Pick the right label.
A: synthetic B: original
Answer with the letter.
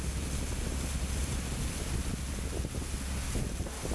B